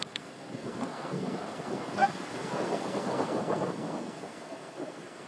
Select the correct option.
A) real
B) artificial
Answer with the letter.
B